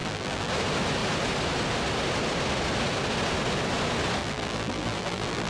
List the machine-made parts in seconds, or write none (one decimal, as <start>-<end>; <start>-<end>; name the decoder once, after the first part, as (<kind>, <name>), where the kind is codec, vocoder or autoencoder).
0.0-0.5 (vocoder, BigVGAN v2); 4.2-5.5